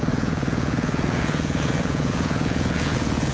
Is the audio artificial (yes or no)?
yes